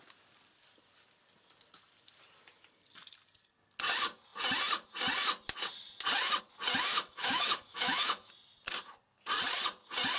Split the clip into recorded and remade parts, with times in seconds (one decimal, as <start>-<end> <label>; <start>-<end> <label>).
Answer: 0.0-6.9 recorded; 6.9-8.3 remade; 8.3-10.2 recorded